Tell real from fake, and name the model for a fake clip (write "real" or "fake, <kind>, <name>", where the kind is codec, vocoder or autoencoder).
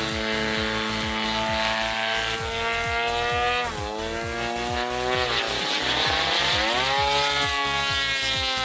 real